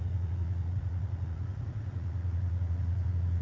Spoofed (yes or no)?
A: yes